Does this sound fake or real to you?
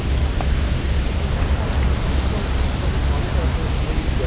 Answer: real